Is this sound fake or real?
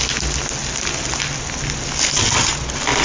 real